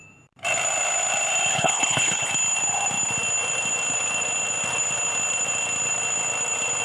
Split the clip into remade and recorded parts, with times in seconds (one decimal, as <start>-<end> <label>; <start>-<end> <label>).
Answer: 0.0-1.5 recorded; 1.5-2.3 remade; 2.3-6.8 recorded